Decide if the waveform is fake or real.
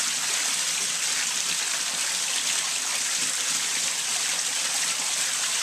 real